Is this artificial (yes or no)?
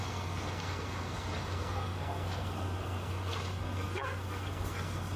yes